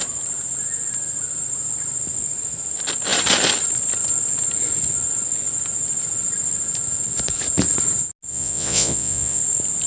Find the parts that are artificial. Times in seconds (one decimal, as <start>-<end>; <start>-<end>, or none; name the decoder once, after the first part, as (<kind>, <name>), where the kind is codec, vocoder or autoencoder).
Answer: 8.3-9.4 (vocoder, Vocos)